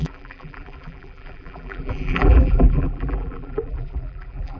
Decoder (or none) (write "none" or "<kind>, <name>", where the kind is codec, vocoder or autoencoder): vocoder, BigVGAN v2